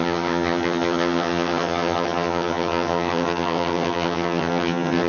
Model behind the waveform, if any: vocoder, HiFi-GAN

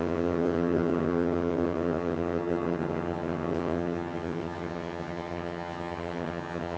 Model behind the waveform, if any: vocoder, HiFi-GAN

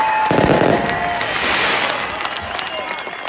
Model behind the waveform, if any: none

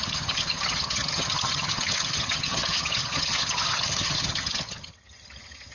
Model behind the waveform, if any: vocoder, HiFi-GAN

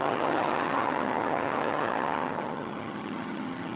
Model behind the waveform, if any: vocoder, HiFi-GAN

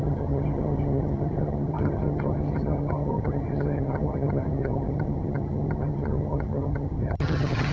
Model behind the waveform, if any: vocoder, HiFi-GAN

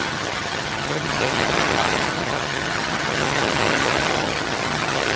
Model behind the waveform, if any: vocoder, HiFi-GAN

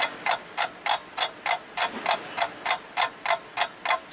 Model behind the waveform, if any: none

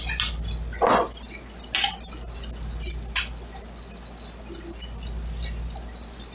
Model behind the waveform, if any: none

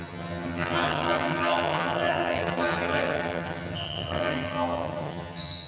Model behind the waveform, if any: vocoder, HiFi-GAN